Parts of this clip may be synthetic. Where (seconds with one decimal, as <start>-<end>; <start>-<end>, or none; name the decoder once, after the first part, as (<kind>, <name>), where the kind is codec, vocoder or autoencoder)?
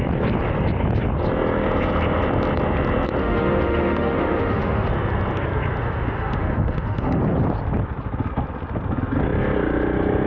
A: 3.2-4.9 (autoencoder, DAC-VAE); 5.8-7.2